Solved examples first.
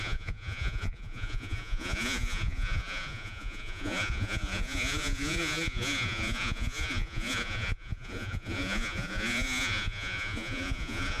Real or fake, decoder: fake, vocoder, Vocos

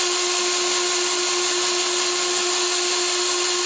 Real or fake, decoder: real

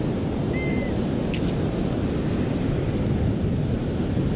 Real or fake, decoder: real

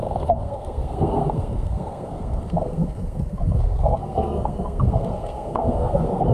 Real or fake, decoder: fake, codec, SNAC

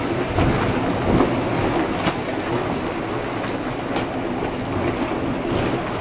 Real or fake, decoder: real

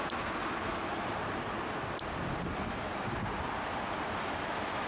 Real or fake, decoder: real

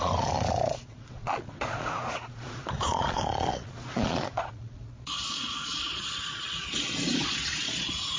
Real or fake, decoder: fake, vocoder, Vocos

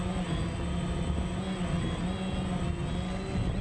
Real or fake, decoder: real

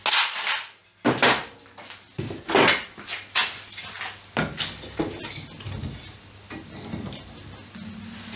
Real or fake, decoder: real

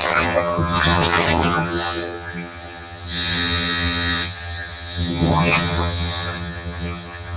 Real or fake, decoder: fake, vocoder, HiFi-GAN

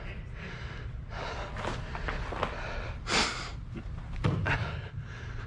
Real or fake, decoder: real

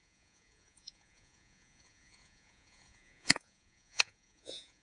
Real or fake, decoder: fake, vocoder, Vocos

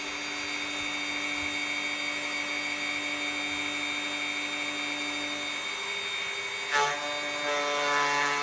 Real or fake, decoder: real